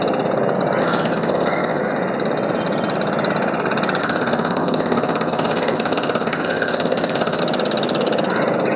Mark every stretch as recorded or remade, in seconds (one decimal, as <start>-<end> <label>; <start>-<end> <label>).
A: 0.0-0.8 recorded; 0.8-1.8 remade; 1.8-4.0 recorded; 4.0-7.4 remade; 7.4-8.8 recorded